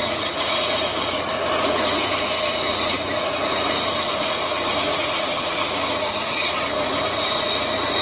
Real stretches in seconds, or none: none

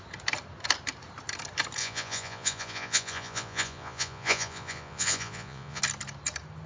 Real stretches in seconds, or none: 0.0-1.8; 5.8-6.7

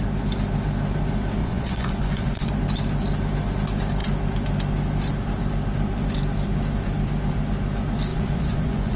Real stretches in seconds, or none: 0.0-1.4; 2.5-8.1

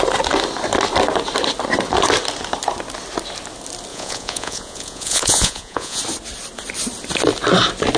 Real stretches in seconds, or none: 0.0-3.9; 6.0-8.0

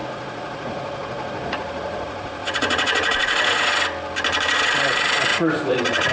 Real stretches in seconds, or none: 3.7-5.3

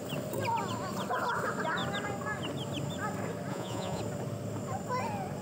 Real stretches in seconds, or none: 0.0-3.5; 4.0-5.4

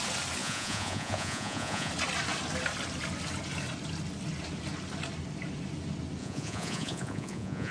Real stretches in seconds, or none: 0.0-0.4; 1.9-6.2